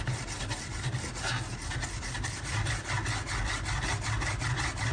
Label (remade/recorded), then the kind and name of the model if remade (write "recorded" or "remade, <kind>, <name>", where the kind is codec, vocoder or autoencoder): recorded